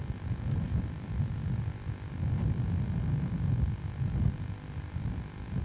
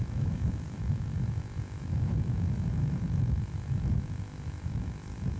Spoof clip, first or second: second